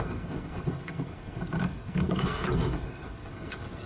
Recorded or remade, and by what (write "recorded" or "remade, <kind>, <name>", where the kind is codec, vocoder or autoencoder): remade, codec, SNAC